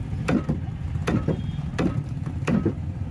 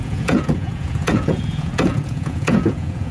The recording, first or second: first